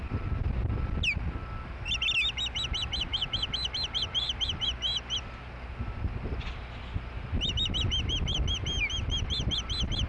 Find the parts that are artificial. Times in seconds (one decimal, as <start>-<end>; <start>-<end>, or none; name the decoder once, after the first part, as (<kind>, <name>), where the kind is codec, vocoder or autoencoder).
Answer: none

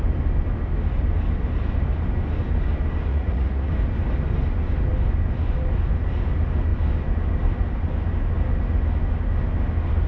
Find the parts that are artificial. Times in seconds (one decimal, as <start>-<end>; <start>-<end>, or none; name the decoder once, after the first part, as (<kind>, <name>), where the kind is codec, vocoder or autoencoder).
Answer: 3.1-3.7 (vocoder, Vocos)

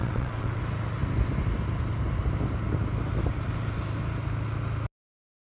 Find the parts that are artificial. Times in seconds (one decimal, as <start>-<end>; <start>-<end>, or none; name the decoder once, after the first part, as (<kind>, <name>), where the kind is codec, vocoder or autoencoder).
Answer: 0.0-0.6 (vocoder, WaveNeXt)

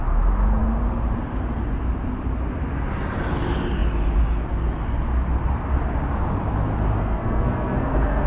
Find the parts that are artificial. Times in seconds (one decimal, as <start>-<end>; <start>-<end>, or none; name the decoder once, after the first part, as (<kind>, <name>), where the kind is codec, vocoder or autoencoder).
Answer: 7.0-8.3 (codec, SNAC)

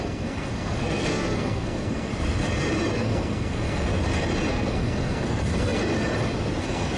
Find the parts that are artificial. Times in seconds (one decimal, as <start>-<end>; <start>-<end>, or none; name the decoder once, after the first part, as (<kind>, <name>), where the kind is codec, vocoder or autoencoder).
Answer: 0.0-2.1 (codec, SNAC); 2.9-3.9; 4.5-5.8; 6.6-7.0

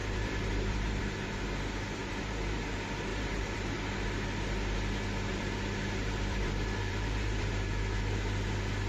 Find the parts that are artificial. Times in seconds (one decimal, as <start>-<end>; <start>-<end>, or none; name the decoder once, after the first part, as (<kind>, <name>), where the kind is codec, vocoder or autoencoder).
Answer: 0.0-1.0 (vocoder, BigVGAN v2); 2.0-2.6; 3.1-4.0; 5.3-7.5

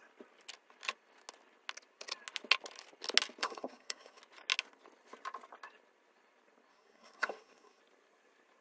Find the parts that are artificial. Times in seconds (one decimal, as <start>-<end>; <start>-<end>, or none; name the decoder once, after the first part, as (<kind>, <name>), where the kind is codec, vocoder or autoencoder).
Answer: 3.4-4.2 (codec, SNAC); 6.7-7.8

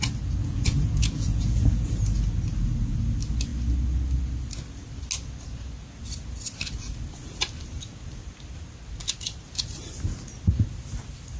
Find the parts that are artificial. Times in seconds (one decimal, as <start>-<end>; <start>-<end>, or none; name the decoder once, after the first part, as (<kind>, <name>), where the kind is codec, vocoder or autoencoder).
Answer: 0.4-1.9 (vocoder, Vocos)